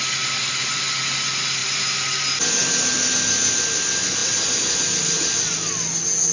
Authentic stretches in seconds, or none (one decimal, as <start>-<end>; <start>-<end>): 0.0-6.3